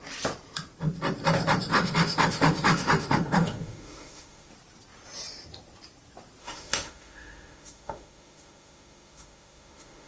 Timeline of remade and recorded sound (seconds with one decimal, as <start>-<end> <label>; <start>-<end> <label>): 0.0-1.7 recorded; 1.7-4.5 remade; 4.5-6.4 recorded; 6.4-10.1 remade